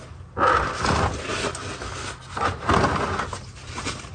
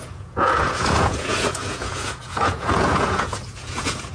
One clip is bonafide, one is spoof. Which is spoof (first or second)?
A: second